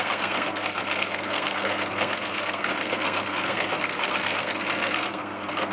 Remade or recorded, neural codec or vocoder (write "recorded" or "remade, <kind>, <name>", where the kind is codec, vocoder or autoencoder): remade, codec, SNAC